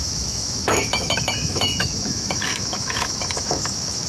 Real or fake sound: fake